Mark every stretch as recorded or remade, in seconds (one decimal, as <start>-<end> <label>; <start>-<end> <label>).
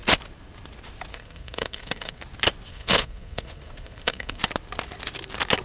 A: 0.0-1.1 recorded; 1.1-2.2 remade; 2.2-2.7 recorded; 2.7-4.4 remade; 4.4-5.6 recorded